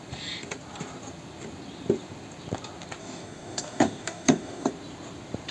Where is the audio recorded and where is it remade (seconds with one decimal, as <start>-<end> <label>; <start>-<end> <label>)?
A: 0.0-3.0 recorded; 3.0-4.7 remade; 4.7-5.5 recorded